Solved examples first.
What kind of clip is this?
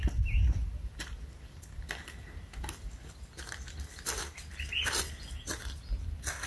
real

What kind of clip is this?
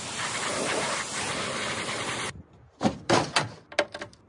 real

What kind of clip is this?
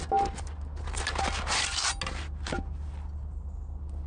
real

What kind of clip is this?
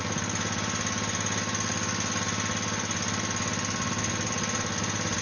real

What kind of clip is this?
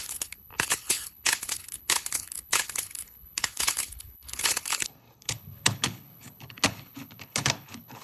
fake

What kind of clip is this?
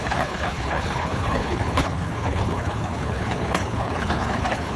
fake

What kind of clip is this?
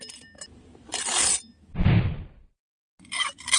real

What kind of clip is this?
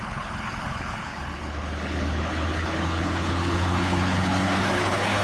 fake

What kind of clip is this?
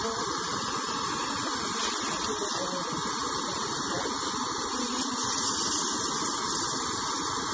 real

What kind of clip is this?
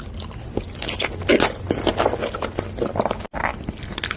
real